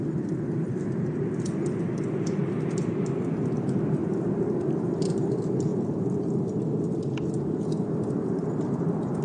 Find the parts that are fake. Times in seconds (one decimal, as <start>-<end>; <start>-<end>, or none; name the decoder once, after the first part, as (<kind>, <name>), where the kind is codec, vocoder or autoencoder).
4.0-4.9 (vocoder, BigVGAN v2)